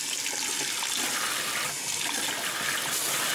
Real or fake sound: real